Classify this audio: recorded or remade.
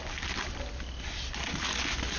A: recorded